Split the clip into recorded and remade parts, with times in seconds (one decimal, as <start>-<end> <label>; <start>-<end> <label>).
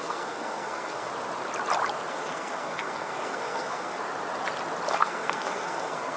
0.0-1.1 remade; 1.1-2.1 recorded; 2.1-4.0 remade; 4.0-4.9 recorded; 4.9-6.2 remade